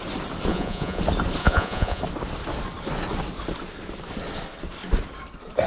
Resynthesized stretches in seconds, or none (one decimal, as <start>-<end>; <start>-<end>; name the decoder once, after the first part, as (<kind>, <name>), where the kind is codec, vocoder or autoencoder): 0.5-1.0 (vocoder, Vocos); 1.4-2.0